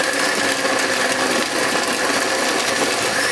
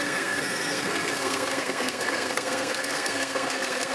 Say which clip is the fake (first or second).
second